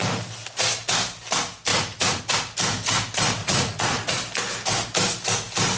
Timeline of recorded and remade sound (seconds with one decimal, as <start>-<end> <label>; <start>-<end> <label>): 0.0-1.7 recorded; 1.7-2.2 remade; 2.2-3.4 recorded; 3.4-4.2 remade; 4.2-5.8 recorded